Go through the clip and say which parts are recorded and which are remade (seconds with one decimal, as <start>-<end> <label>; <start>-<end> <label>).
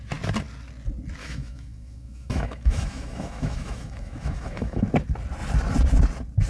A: 0.0-1.2 recorded; 1.2-4.8 remade; 4.8-6.5 recorded